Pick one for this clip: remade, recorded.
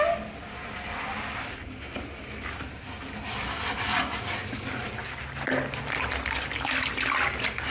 recorded